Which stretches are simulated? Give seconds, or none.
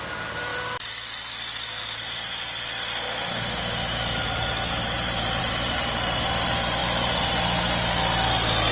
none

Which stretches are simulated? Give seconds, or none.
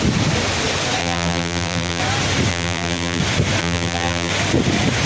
1.0-2.0 (vocoder, BigVGAN v2); 2.5-3.2; 3.6-4.3